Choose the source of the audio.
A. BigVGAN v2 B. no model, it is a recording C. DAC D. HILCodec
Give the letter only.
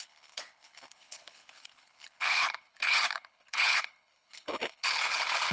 D